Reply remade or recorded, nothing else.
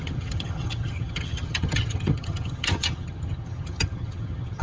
remade